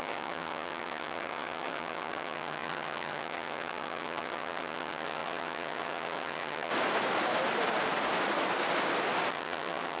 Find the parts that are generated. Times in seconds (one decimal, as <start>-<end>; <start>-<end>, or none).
0.0-6.7; 9.3-10.0